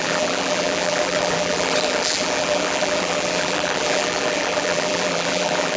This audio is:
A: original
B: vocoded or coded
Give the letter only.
B